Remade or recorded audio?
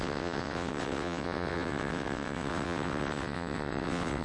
remade